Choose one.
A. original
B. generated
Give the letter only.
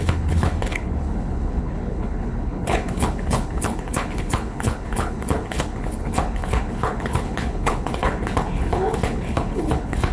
B